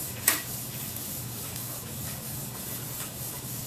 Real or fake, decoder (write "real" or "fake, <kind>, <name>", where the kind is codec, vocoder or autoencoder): fake, codec, DAC